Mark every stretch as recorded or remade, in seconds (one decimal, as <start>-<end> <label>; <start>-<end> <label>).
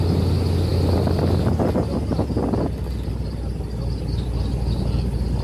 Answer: 0.0-5.4 recorded